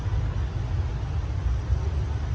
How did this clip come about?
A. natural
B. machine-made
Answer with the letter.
A